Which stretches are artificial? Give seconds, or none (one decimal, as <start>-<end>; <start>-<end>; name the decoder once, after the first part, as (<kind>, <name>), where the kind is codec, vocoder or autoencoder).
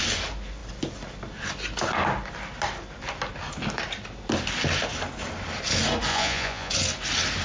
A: 6.1-6.7 (vocoder, Vocos)